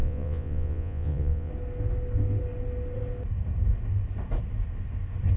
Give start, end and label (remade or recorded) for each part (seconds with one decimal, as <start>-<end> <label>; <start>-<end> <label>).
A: 0.0-1.5 remade; 1.5-5.4 recorded